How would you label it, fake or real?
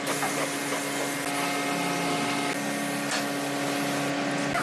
real